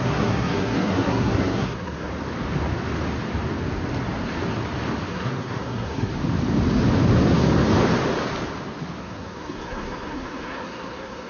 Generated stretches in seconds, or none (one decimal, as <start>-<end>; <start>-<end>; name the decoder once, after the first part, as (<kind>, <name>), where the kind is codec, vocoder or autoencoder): 0.0-2.1 (codec, SNAC); 5.1-6.1; 9.0-11.3